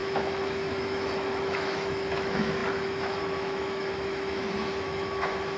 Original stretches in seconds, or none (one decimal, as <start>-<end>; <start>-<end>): none